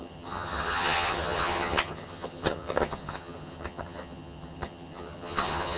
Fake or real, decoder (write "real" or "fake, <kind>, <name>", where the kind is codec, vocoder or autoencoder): fake, vocoder, HiFi-GAN